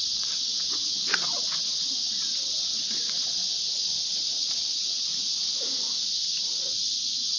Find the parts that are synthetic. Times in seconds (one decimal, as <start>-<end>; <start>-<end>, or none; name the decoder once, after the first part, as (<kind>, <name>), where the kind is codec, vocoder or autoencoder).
0.0-3.4 (vocoder, WaveNeXt); 4.3-5.1; 6.6-7.4